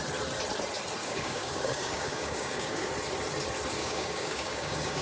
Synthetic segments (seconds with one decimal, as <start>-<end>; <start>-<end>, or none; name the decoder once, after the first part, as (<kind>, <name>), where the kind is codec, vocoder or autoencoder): 1.0-2.9 (codec, DAC); 3.8-5.0